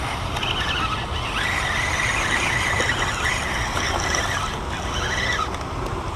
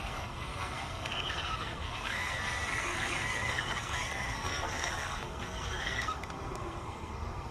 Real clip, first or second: first